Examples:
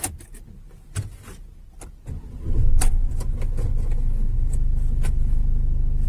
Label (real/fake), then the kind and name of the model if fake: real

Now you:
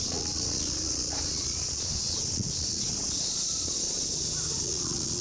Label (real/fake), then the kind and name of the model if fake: fake, vocoder, Vocos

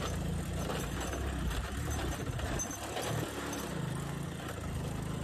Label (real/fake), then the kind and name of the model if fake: real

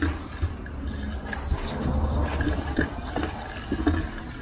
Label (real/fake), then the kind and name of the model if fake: real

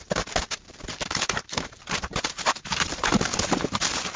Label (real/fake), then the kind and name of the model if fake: fake, vocoder, BigVGAN v2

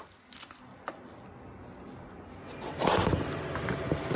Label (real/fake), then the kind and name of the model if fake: real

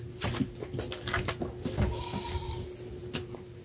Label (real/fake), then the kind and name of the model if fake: real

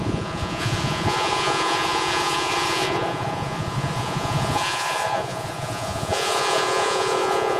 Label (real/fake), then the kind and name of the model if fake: fake, vocoder, Vocos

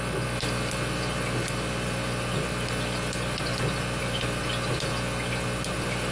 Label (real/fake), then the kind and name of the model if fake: real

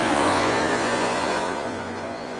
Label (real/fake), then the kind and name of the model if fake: fake, vocoder, Vocos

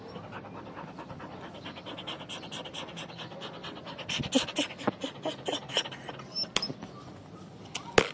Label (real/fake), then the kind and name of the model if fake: real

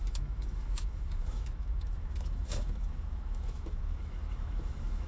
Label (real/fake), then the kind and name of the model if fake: fake, autoencoder, DAC-VAE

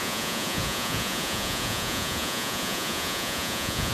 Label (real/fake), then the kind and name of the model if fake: fake, vocoder, Vocos